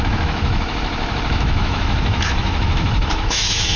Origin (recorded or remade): remade